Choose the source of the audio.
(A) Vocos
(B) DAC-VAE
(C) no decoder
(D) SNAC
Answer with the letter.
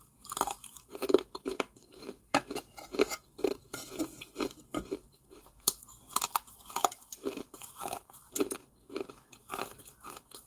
B